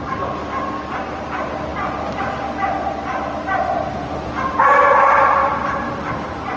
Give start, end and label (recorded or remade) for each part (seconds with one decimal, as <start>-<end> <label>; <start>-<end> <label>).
0.0-6.6 recorded